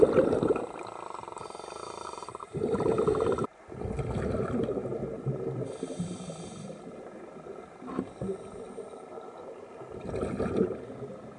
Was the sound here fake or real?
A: real